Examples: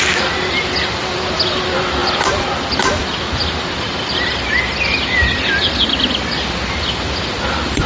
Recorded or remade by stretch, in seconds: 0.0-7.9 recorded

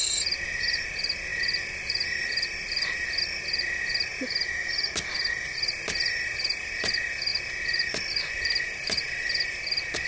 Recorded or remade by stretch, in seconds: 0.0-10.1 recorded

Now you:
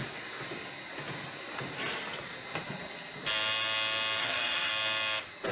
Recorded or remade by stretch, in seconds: 0.0-4.2 recorded; 4.2-4.7 remade; 4.7-5.5 recorded

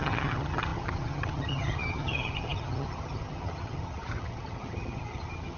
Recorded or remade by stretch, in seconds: 0.0-5.6 remade

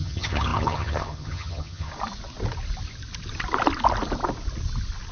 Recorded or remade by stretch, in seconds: 0.0-1.9 remade; 1.9-5.1 recorded

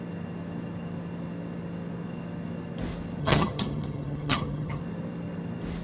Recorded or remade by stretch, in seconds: 0.0-3.2 recorded; 3.2-4.8 remade; 4.8-5.8 recorded

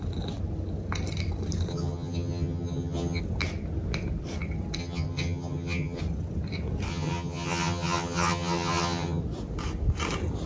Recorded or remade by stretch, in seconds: 0.0-1.7 recorded; 1.7-3.2 remade; 3.2-4.8 recorded; 4.8-6.0 remade; 6.0-6.9 recorded; 6.9-9.2 remade; 9.2-10.5 recorded